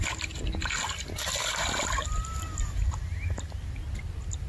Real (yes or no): yes